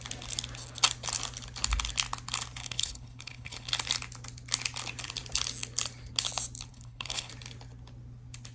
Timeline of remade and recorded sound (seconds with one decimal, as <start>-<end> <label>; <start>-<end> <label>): 0.0-2.6 recorded; 2.6-3.7 remade; 3.7-6.7 recorded; 6.7-7.3 remade; 7.3-8.5 recorded